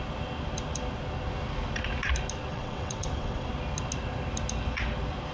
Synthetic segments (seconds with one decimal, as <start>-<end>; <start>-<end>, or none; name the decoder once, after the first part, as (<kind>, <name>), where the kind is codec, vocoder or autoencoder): 2.5-3.5 (vocoder, WaveNeXt)